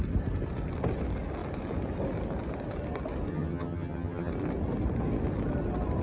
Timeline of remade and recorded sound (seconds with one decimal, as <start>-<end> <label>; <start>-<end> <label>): 0.0-3.3 recorded; 3.3-4.3 remade; 4.3-6.0 recorded